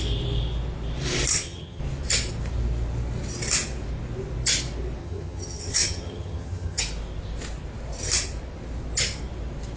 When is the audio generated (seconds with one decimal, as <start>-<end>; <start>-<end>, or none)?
1.3-1.8; 5.0-6.8